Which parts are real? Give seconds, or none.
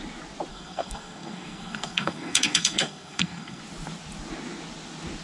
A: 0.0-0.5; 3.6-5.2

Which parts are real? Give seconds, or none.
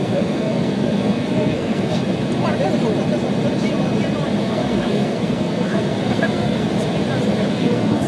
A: 2.0-4.4; 6.7-7.5